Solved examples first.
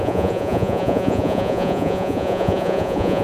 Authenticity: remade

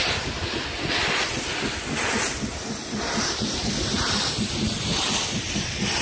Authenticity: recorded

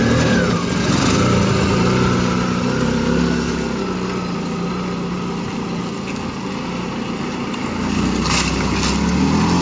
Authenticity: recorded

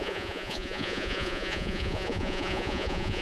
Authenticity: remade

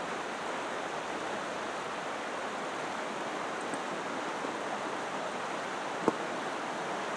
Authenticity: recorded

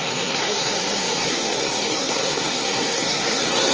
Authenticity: remade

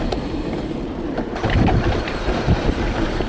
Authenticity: remade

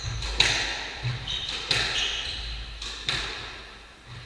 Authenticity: recorded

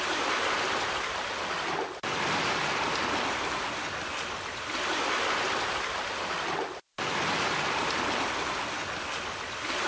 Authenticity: recorded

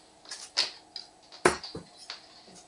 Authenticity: recorded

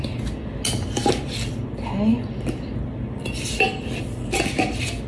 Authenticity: recorded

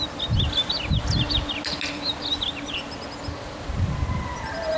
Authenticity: recorded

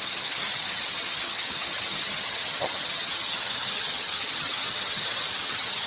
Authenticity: remade